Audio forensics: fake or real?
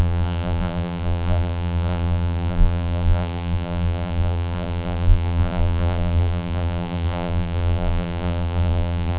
fake